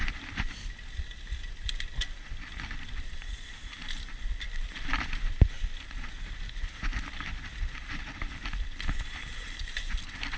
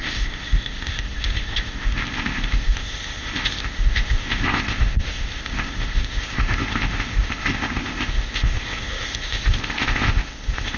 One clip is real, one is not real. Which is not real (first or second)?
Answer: second